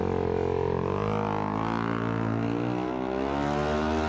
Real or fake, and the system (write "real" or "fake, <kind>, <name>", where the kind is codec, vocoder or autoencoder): real